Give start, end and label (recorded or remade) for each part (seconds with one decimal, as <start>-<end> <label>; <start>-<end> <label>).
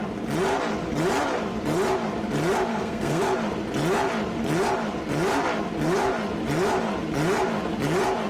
0.0-2.7 recorded; 2.7-3.2 remade; 3.2-8.3 recorded